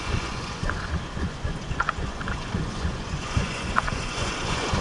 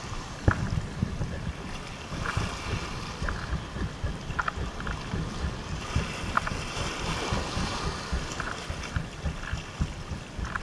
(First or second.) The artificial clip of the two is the first